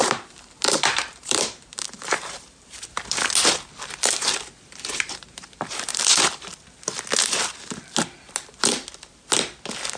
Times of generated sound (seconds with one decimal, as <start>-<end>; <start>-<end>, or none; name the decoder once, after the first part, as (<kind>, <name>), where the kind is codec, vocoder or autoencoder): 0.0-3.2 (vocoder, BigVGAN v2); 4.9-6.0